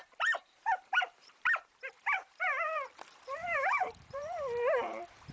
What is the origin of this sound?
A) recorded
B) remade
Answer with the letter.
B